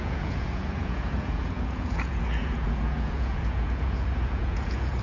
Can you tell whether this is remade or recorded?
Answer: remade